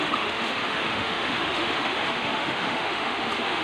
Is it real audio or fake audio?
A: fake